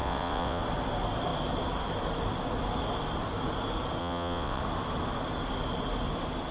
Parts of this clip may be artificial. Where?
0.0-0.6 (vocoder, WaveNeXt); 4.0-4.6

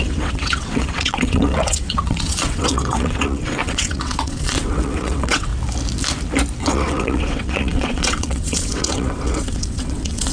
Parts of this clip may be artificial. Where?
0.0-5.5 (vocoder, WaveNeXt); 6.6-10.3

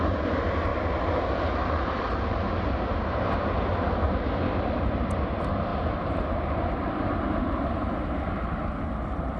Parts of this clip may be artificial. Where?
none

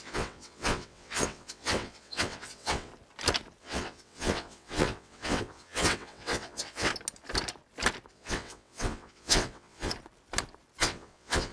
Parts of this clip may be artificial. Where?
0.0-2.9 (vocoder, WaveNeXt); 3.6-6.9; 8.1-9.9; 10.8-11.5